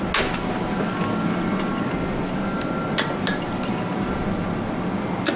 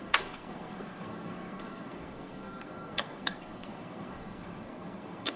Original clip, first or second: first